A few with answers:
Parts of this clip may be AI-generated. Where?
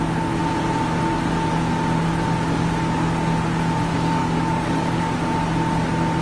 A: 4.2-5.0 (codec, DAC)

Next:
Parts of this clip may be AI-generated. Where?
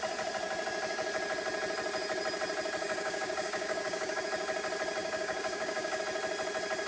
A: 2.8-4.2 (codec, DAC); 5.0-6.0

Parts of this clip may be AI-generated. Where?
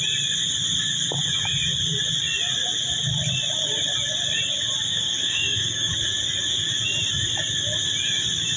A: 4.9-5.9 (codec, DAC)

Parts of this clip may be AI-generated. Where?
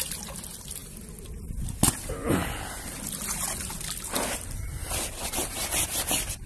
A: none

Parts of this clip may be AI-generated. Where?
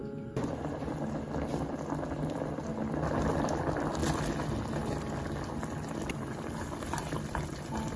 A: none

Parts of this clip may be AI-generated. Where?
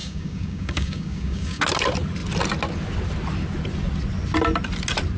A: 0.0-1.6 (codec, DAC)